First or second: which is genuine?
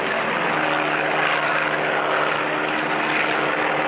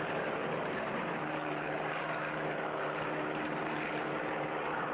first